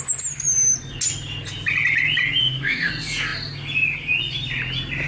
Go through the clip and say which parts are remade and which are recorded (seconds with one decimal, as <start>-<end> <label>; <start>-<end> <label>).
0.0-2.4 recorded; 2.4-2.9 remade; 2.9-5.1 recorded